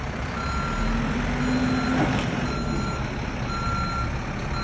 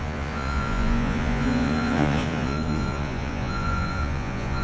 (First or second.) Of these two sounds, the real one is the first